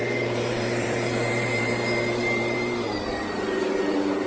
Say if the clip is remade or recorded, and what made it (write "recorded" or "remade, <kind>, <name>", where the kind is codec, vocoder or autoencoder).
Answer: remade, vocoder, BigVGAN v2